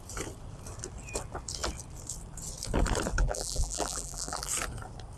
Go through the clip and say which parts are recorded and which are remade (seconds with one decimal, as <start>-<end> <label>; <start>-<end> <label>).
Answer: 0.0-3.2 recorded; 3.2-4.5 remade; 4.5-5.2 recorded